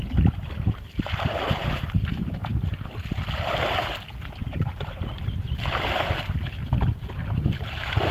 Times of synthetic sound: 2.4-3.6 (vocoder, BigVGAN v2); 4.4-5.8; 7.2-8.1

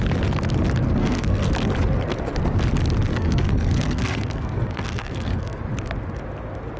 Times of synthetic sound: 1.0-1.5 (codec, SNAC); 3.1-5.6

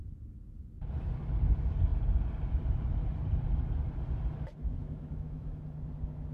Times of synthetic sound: 4.8-5.6 (autoencoder, DAC-VAE)

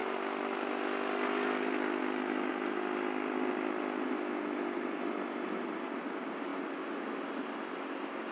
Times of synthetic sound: none

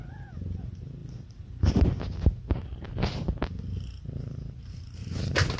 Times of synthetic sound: 1.0-1.7 (vocoder, BigVGAN v2)

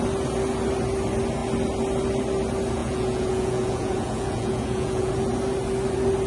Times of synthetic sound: 2.8-5.1 (vocoder, Vocos)